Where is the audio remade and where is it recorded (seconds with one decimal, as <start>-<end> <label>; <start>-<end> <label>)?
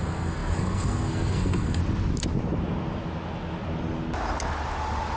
0.0-1.8 remade; 1.8-5.2 recorded